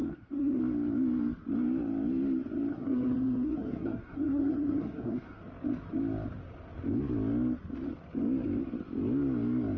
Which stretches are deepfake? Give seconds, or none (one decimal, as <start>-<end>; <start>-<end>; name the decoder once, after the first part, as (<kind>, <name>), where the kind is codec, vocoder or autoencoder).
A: 0.0-0.6 (codec, SNAC); 2.7-5.4